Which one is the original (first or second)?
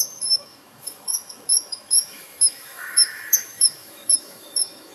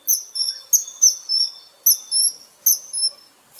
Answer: second